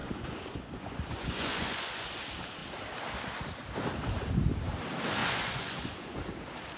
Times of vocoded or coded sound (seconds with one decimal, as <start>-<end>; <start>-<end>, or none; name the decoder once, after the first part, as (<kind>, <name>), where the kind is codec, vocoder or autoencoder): 0.0-2.1 (vocoder, Vocos); 5.2-6.2